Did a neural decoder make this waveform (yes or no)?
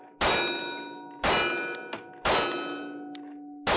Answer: no